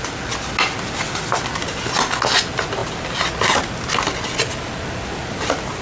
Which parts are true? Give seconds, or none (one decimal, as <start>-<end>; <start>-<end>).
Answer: 0.0-5.8